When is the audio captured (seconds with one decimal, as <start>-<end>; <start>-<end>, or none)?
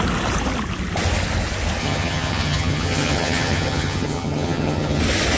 0.0-1.8; 5.0-5.4